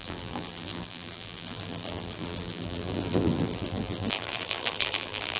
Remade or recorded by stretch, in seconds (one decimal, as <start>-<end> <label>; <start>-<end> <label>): 0.0-5.4 remade